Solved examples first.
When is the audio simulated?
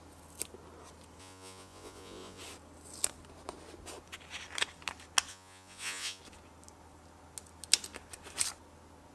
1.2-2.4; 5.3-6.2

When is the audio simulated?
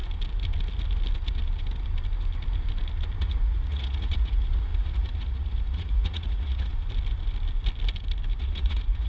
3.2-6.7; 8.4-9.1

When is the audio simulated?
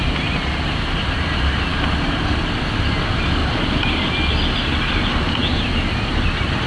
none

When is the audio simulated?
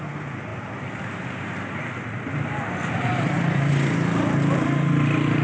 none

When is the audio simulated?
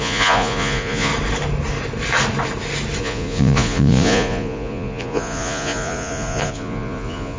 0.0-1.1; 3.0-7.4